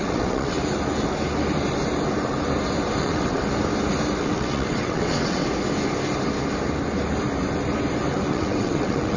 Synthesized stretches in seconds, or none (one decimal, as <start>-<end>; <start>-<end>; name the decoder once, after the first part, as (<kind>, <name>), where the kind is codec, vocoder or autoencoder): 0.0-0.6 (vocoder, WaveNeXt); 3.0-3.4; 4.2-5.4; 8.3-9.2